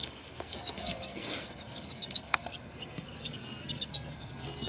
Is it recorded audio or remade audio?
remade